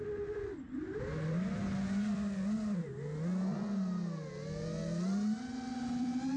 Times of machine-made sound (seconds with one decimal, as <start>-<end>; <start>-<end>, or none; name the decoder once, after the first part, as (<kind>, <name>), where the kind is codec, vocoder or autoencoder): none